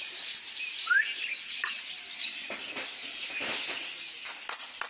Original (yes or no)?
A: yes